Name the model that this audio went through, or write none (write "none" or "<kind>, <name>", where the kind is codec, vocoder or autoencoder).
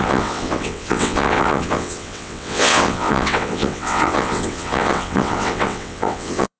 vocoder, WaveNeXt